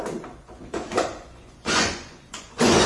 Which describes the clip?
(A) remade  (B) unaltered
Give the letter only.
A